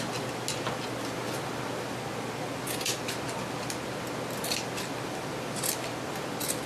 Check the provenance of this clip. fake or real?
real